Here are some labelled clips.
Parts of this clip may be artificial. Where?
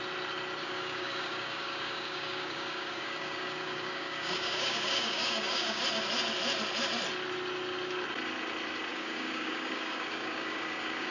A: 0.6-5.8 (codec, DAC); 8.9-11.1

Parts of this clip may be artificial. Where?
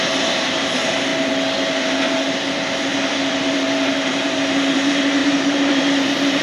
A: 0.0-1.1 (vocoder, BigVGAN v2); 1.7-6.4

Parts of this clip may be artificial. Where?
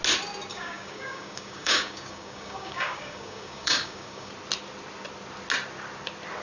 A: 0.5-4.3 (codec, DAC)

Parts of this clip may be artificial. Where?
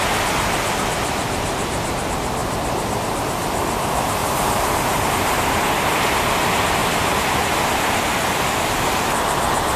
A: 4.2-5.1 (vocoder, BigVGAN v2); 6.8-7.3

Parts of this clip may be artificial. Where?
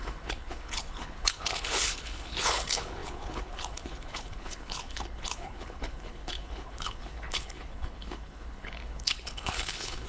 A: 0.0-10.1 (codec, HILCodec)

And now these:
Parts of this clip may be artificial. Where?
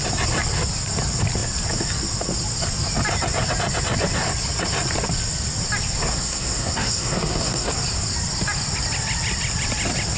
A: 6.1-7.7 (codec, SNAC)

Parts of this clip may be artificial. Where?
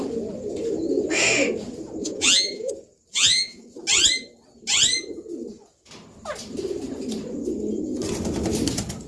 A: 2.0-2.7 (vocoder, Vocos); 3.1-3.8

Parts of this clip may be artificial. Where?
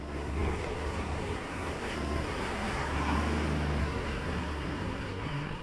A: 0.0-3.2 (codec, SNAC); 3.8-5.6